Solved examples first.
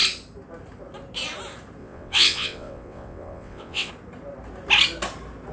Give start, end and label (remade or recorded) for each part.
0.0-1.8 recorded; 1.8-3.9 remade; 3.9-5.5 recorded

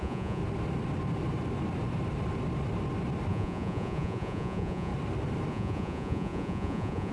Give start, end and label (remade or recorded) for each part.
0.0-0.4 remade; 0.4-3.3 recorded; 3.3-4.9 remade; 4.9-5.5 recorded; 5.5-7.1 remade

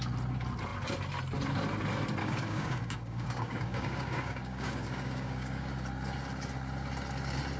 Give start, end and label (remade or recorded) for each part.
0.0-2.2 recorded; 2.2-5.7 remade; 5.7-7.6 recorded

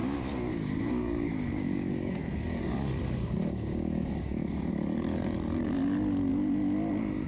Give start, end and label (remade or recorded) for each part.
0.0-2.6 remade; 2.6-3.0 recorded; 3.0-4.7 remade; 4.7-7.3 recorded